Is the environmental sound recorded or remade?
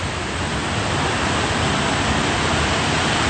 recorded